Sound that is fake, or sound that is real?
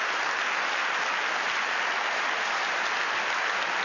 real